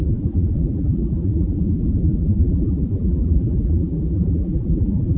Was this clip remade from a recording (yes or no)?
yes